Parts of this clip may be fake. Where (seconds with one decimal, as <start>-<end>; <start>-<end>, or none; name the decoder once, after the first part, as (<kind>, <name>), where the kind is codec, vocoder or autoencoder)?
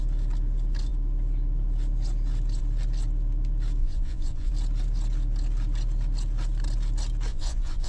3.8-4.5 (vocoder, Vocos); 7.3-7.9